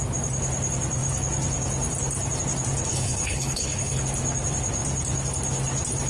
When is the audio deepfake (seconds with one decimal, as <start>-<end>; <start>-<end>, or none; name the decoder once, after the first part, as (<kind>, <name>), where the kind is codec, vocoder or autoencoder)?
2.9-4.0 (codec, HILCodec)